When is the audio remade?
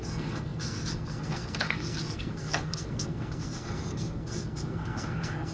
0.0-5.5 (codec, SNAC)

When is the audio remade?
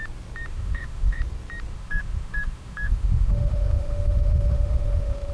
0.5-1.2 (autoencoder, DAC-VAE); 1.7-5.3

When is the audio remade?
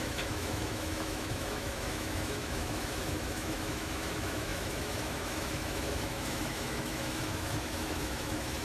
0.0-8.6 (autoencoder, DAC-VAE)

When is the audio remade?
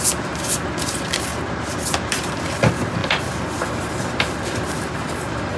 0.0-1.3 (vocoder, BigVGAN v2); 2.1-5.6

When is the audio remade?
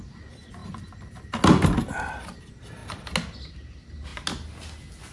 none